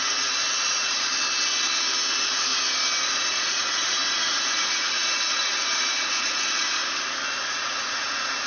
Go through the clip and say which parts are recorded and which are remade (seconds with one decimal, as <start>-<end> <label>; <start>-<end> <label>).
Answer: 0.0-1.1 remade; 1.1-2.1 recorded; 2.1-2.5 remade; 2.5-3.1 recorded; 3.1-6.8 remade; 6.8-7.5 recorded; 7.5-8.5 remade